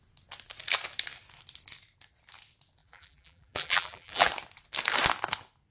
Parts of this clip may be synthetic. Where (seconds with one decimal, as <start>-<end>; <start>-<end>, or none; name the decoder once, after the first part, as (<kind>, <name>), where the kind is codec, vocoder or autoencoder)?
2.8-4.3 (vocoder, BigVGAN v2)